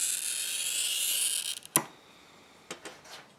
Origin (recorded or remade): recorded